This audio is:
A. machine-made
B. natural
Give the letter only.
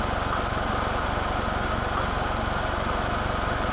A